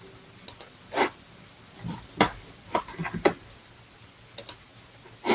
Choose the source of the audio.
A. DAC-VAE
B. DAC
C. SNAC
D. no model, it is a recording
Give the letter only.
D